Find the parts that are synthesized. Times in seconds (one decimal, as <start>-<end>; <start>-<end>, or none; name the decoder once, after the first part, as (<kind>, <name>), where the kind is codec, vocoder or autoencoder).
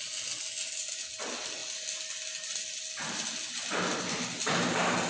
none